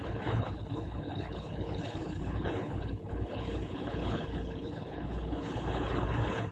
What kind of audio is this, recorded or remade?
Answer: remade